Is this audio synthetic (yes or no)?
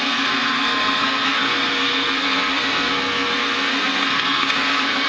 yes